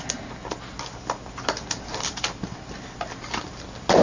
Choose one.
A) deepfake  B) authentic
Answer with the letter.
B